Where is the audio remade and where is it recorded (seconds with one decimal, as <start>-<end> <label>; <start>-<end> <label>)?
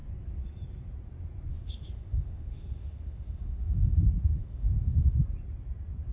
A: 0.0-1.5 recorded; 1.5-5.2 remade; 5.2-6.1 recorded